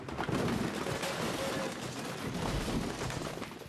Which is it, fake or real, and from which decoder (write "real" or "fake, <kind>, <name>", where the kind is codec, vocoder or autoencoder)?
real